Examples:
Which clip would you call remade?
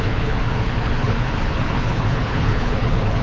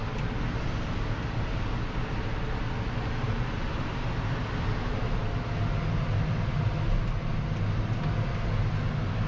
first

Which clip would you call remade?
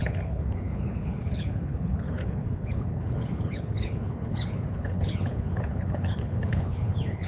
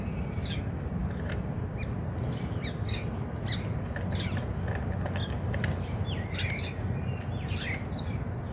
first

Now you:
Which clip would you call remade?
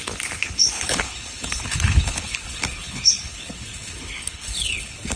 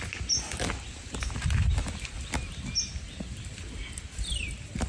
first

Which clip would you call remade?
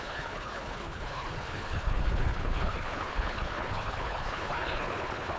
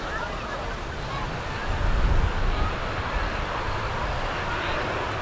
first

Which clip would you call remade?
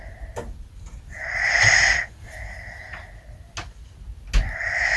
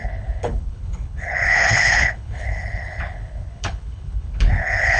second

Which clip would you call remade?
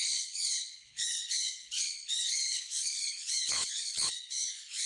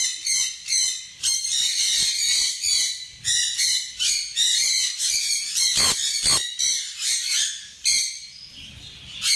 first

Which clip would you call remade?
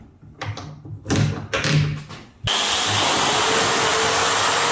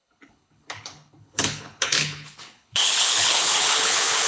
second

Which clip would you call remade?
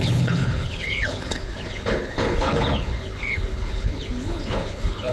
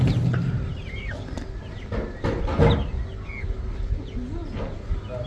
first